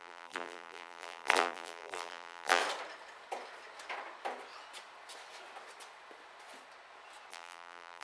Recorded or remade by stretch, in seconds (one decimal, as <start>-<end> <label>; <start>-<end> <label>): 0.0-2.6 remade; 2.6-7.3 recorded; 7.3-8.0 remade